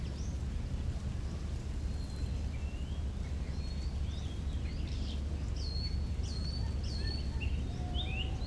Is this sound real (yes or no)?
yes